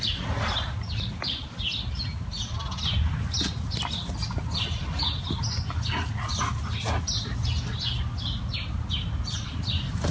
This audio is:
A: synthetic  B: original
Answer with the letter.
B